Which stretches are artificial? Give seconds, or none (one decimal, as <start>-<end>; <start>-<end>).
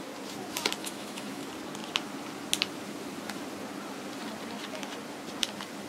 0.8-1.4